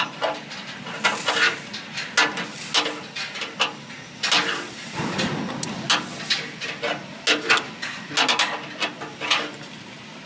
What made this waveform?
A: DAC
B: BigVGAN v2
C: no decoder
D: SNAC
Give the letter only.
C